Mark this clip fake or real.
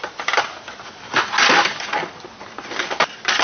real